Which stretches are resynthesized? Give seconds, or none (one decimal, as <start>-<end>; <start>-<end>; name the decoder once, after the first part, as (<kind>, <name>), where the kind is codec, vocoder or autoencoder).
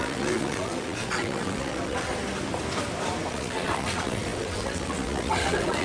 0.0-2.1 (vocoder, WaveNeXt); 3.3-5.8